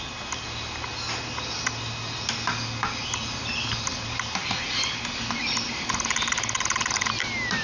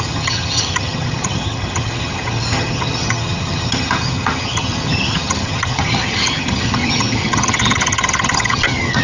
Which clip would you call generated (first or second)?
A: second